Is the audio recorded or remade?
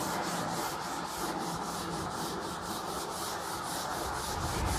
recorded